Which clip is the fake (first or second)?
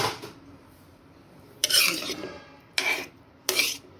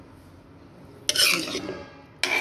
first